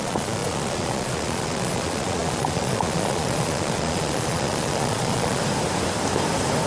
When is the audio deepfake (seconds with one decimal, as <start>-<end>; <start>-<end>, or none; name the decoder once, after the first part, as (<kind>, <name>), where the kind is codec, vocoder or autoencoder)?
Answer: 0.0-5.4 (vocoder, Vocos)